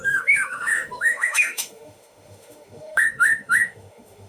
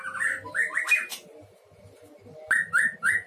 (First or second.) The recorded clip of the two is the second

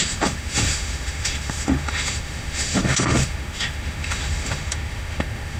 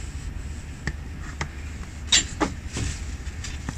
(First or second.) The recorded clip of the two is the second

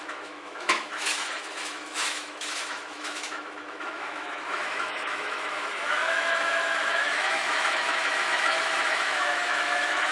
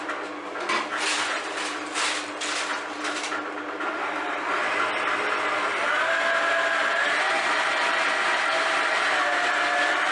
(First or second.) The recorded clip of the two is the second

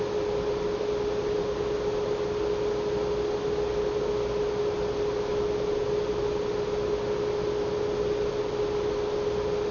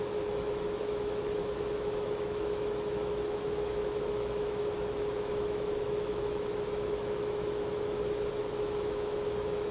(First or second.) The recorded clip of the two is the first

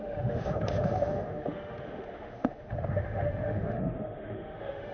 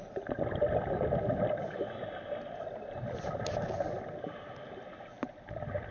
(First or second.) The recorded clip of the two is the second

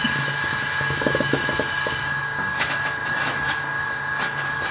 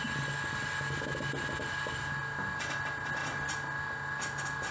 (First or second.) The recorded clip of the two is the second